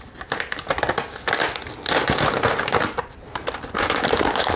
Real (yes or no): yes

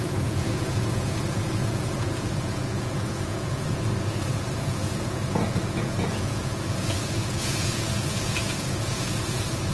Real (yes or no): no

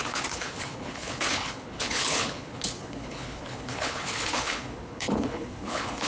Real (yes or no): no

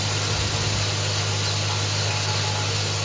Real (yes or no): yes